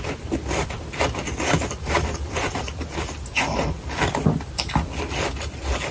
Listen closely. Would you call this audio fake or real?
fake